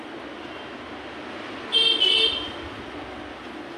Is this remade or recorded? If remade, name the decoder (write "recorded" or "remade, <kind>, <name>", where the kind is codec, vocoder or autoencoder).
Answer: recorded